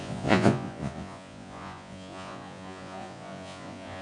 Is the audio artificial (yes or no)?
yes